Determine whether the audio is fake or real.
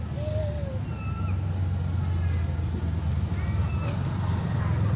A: real